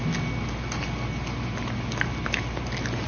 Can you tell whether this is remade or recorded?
recorded